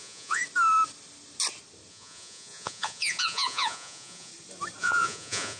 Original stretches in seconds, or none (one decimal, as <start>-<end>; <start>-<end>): 0.4-1.9; 4.3-4.8